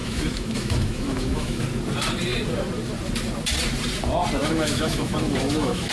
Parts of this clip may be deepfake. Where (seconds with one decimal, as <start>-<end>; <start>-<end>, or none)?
0.0-1.6; 4.4-5.9